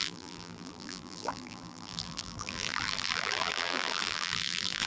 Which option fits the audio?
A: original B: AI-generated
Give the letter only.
B